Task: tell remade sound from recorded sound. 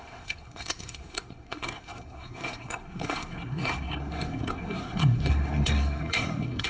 remade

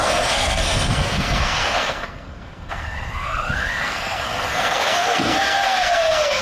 remade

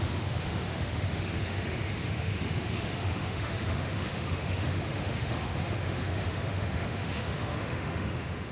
remade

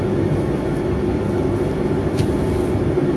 recorded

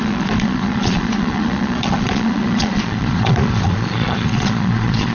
remade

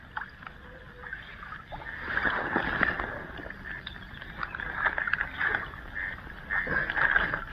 recorded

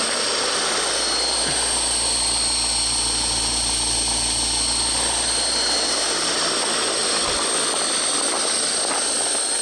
recorded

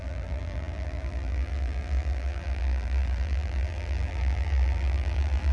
remade